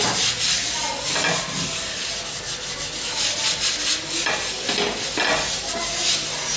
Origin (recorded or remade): recorded